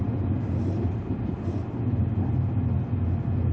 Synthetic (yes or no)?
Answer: no